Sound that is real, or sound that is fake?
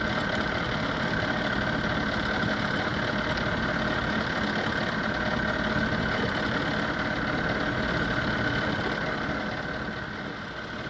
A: real